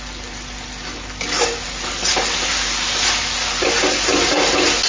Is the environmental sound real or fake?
real